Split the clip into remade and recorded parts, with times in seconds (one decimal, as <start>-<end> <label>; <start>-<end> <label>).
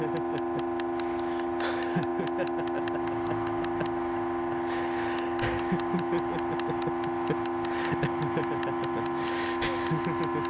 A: 0.0-10.5 recorded